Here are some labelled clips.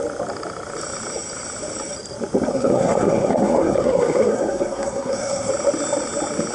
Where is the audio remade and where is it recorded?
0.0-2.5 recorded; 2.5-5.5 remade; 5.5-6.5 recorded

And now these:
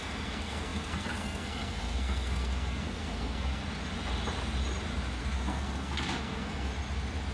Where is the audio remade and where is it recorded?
0.0-3.6 remade; 3.6-5.2 recorded; 5.2-6.7 remade; 6.7-7.3 recorded

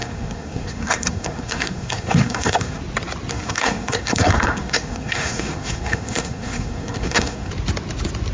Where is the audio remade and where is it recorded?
0.0-2.8 remade; 2.8-3.3 recorded; 3.3-7.5 remade; 7.5-8.3 recorded